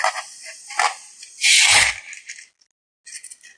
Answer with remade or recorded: recorded